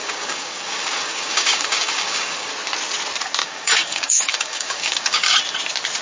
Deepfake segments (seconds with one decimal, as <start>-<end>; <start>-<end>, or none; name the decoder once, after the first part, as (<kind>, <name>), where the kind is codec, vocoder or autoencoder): 0.0-2.5 (codec, DAC); 3.4-5.4